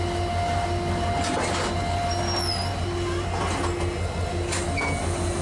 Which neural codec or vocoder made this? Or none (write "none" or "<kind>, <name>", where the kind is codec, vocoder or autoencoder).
none